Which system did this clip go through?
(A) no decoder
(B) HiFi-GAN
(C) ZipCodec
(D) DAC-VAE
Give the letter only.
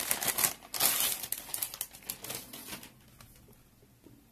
A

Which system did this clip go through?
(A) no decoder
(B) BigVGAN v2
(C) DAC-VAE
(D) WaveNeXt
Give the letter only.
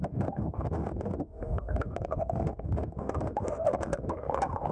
C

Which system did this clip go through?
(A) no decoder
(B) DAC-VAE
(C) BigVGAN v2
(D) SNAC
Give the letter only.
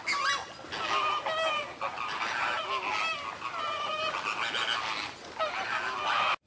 A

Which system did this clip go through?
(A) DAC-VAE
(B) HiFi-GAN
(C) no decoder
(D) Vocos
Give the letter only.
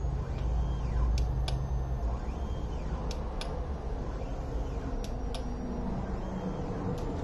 C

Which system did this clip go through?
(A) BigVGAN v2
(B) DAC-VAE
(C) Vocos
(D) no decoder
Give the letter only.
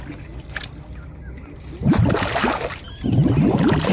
D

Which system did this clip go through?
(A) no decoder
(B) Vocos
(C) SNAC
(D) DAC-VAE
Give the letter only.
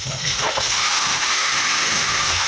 D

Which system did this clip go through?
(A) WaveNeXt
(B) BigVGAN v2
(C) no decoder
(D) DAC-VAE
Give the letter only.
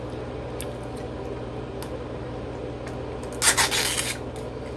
C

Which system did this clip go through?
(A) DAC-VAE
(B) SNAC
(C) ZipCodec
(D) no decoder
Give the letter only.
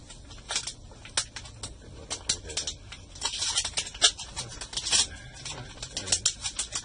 D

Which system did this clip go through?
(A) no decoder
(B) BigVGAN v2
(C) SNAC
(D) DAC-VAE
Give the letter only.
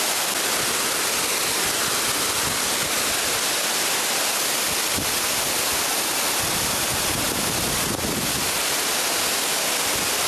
A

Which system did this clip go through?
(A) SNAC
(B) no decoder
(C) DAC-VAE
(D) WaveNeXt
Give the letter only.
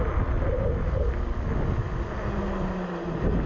B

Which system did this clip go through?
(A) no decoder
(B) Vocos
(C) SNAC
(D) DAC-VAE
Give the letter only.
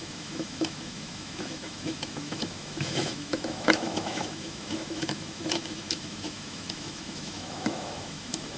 D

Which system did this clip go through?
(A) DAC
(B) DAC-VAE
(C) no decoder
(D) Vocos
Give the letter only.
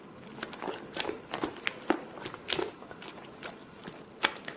C